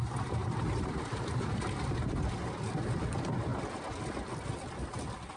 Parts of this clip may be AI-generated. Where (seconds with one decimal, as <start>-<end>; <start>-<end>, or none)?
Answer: 0.4-1.7